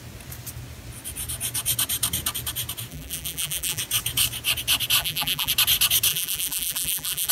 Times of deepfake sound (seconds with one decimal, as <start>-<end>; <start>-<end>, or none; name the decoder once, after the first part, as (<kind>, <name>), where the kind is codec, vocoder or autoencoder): 2.9-3.8 (vocoder, BigVGAN v2); 5.0-5.5; 6.1-7.3